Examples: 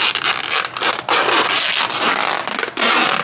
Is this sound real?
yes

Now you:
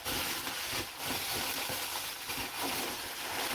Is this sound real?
yes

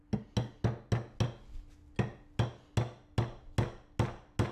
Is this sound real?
yes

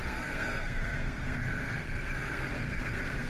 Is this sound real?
no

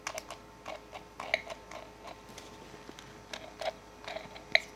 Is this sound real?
yes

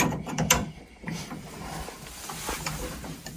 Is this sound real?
no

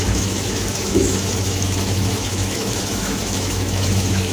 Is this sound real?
no